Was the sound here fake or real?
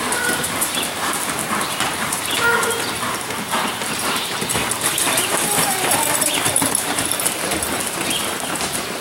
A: fake